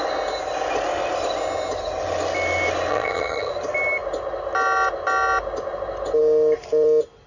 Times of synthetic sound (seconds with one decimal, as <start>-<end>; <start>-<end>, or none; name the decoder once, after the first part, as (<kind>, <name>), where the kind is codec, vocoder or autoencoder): 2.9-3.5 (vocoder, HiFi-GAN)